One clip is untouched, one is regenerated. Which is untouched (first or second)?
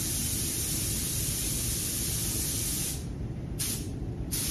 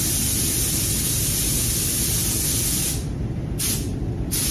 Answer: second